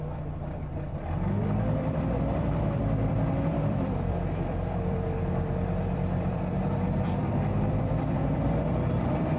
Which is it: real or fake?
fake